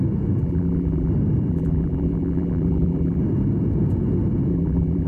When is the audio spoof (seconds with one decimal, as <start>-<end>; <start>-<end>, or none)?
0.4-1.1; 1.5-3.2; 4.5-5.1